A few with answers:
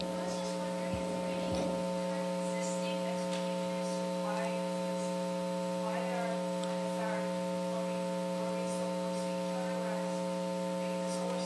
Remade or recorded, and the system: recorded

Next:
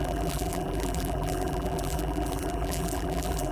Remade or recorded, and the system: remade, vocoder, BigVGAN v2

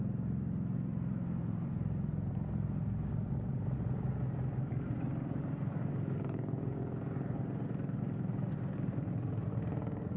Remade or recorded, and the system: remade, vocoder, BigVGAN v2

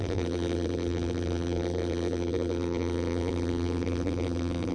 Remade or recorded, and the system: remade, vocoder, BigVGAN v2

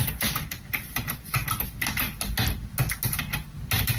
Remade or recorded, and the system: recorded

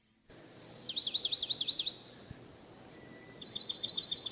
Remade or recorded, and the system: recorded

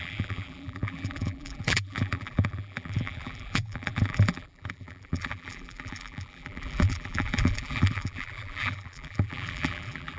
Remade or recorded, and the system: remade, vocoder, BigVGAN v2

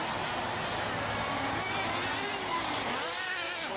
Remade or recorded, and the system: recorded